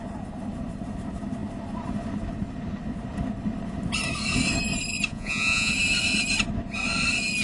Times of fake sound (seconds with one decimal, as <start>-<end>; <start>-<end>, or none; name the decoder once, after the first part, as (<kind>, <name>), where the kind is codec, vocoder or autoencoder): 5.1-5.7 (vocoder, Vocos)